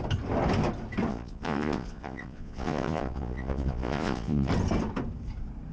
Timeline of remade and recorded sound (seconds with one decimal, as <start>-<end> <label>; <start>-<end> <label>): 0.0-1.1 recorded; 1.1-4.5 remade; 4.5-5.7 recorded